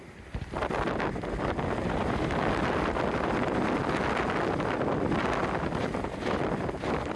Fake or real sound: real